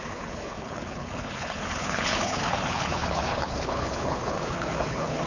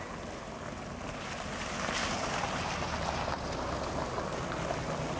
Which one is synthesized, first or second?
first